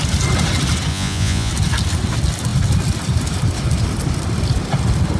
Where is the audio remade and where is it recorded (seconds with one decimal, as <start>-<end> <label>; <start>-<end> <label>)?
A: 0.0-0.9 recorded; 0.9-1.5 remade; 1.5-5.2 recorded